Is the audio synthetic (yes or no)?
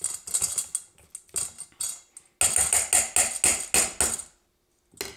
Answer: no